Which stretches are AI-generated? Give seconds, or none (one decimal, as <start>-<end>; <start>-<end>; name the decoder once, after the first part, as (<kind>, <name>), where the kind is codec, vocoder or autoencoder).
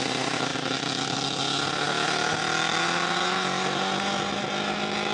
none